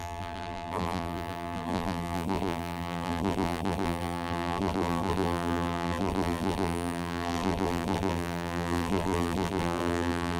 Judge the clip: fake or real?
fake